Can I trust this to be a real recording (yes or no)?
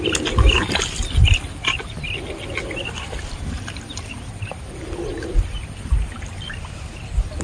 yes